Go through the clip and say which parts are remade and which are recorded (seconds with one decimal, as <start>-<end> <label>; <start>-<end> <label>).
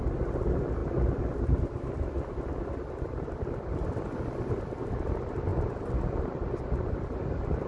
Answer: 0.0-7.7 recorded